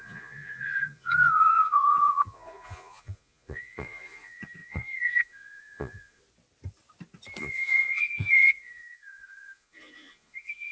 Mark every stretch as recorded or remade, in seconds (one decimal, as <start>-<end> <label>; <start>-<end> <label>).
0.0-6.2 remade; 6.2-7.4 recorded; 7.4-10.7 remade